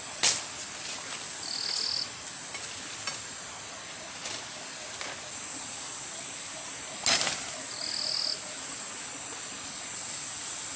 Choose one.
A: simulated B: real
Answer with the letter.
B